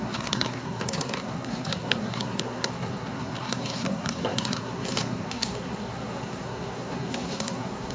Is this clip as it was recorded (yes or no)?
no